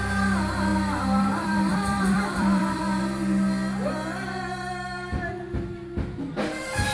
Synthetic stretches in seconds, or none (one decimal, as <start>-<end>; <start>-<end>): 0.7-3.0